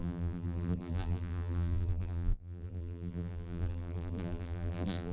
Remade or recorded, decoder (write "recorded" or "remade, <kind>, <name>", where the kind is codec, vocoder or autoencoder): remade, vocoder, BigVGAN v2